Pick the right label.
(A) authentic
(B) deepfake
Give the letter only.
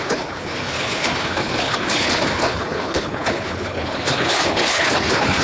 B